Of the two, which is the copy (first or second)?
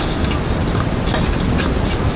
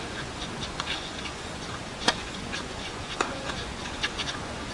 second